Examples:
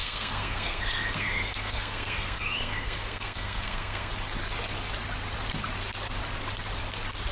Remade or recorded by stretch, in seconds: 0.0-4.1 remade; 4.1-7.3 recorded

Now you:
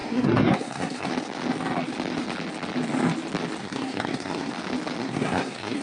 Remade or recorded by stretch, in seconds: 0.0-1.1 remade; 1.1-3.6 recorded; 3.6-4.5 remade; 4.5-5.0 recorded; 5.0-5.8 remade

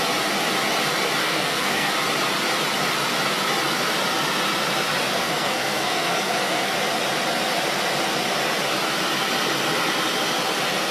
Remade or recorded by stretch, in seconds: 0.0-1.2 recorded; 1.2-1.9 remade; 1.9-5.2 recorded; 5.2-6.7 remade; 6.7-10.9 recorded

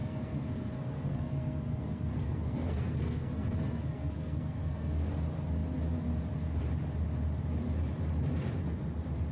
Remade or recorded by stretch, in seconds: 0.0-5.1 remade; 5.1-9.3 recorded